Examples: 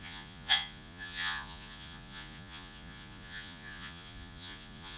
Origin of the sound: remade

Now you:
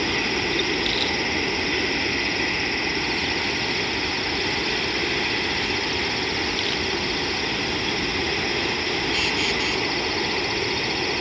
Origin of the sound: recorded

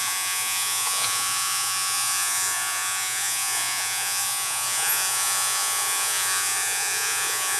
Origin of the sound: remade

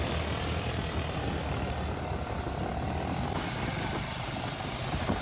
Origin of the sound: recorded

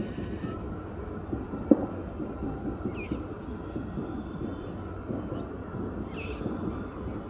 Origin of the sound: recorded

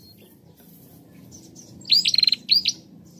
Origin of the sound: recorded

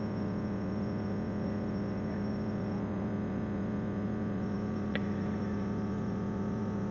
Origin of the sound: remade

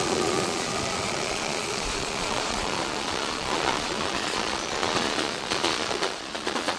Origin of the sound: remade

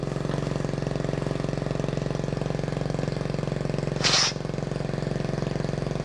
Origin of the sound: recorded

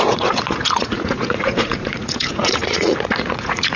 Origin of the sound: remade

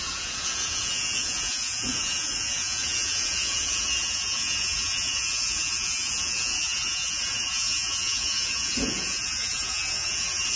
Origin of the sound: remade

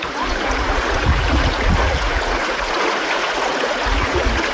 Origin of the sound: remade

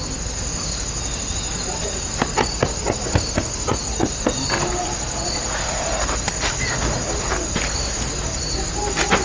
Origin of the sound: recorded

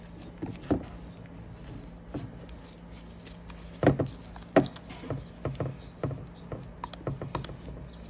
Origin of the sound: recorded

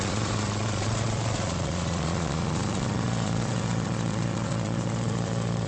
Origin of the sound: remade